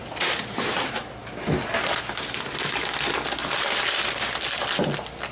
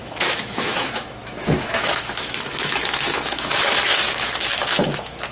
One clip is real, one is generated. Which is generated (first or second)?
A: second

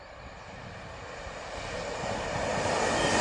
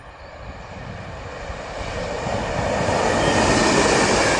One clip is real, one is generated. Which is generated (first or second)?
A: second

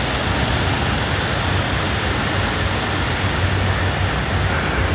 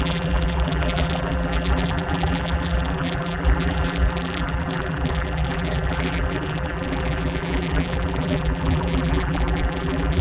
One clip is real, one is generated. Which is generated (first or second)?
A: second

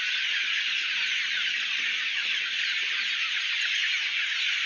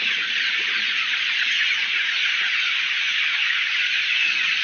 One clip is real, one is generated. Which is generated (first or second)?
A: second